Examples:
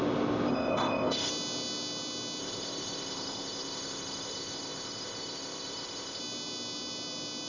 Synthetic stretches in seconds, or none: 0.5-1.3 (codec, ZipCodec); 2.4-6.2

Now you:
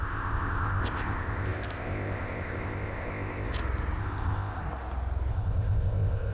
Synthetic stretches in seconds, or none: 0.0-3.5 (codec, ZipCodec); 4.0-4.6; 5.3-6.3

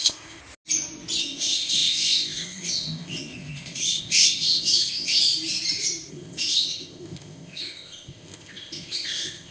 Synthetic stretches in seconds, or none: 0.0-0.4 (codec, ZipCodec); 1.2-5.2; 6.1-9.5

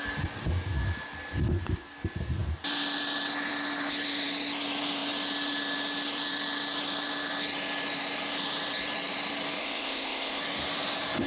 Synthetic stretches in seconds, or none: 9.6-10.4 (codec, ZipCodec)

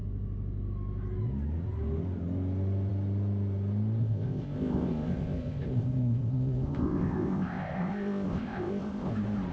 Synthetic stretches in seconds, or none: 4.0-9.1 (codec, ZipCodec)

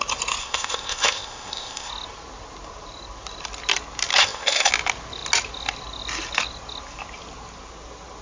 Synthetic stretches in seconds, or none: 0.4-1.9 (codec, ZipCodec); 4.2-4.7